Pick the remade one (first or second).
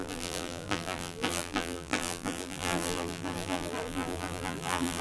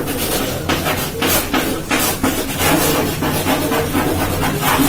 first